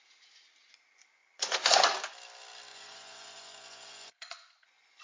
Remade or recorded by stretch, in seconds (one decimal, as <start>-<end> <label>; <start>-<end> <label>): 0.0-1.2 recorded; 1.2-2.0 remade; 2.0-2.7 recorded; 2.7-5.0 remade